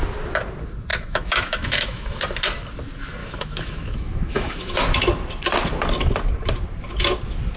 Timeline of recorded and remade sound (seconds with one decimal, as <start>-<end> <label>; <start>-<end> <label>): 0.0-0.9 recorded; 0.9-2.2 remade; 2.2-3.2 recorded; 3.2-4.8 remade; 4.8-7.6 recorded

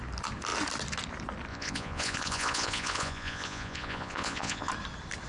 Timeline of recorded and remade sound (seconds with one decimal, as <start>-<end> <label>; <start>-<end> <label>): 0.0-1.5 recorded; 1.5-4.7 remade; 4.7-5.3 recorded

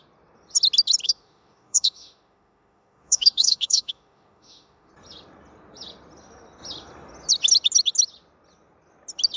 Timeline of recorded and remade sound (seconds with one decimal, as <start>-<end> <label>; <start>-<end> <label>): 0.0-1.0 recorded; 1.0-4.9 remade; 4.9-9.4 recorded